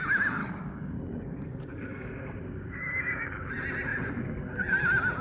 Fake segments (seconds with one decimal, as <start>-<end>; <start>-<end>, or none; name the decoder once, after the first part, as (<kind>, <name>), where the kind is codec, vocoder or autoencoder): 0.4-3.5 (codec, DAC)